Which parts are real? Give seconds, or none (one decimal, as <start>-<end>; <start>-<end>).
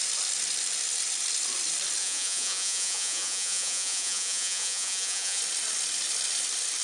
0.0-2.0; 5.4-6.8